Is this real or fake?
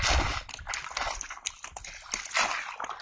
real